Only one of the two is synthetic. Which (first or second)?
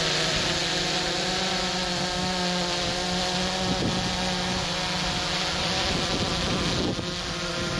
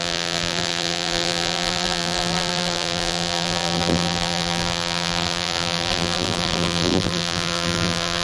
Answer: second